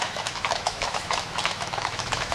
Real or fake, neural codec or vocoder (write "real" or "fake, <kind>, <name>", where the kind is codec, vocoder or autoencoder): fake, autoencoder, DAC-VAE